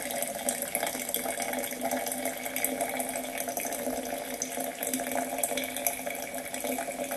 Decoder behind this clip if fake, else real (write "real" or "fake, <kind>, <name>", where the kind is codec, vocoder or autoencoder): real